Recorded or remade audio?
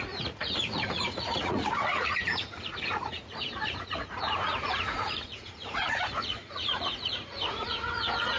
remade